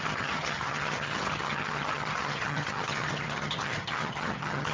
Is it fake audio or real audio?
fake